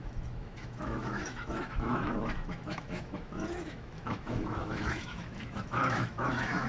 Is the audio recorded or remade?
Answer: remade